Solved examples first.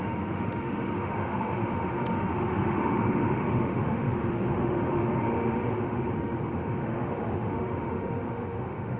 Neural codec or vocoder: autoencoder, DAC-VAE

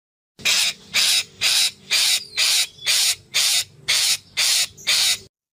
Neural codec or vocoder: none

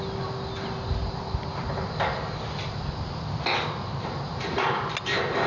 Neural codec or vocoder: none